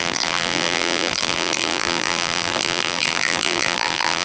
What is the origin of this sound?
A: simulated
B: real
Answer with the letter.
A